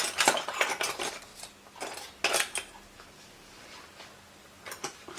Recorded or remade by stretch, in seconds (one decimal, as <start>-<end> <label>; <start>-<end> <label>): 0.0-1.3 remade; 1.3-4.4 recorded; 4.4-5.2 remade